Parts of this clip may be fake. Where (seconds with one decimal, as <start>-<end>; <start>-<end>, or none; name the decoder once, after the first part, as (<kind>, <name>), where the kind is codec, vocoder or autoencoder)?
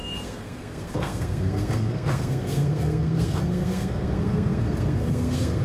0.0-5.6 (codec, SNAC)